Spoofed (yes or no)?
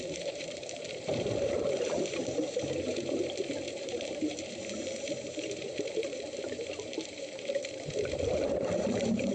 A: yes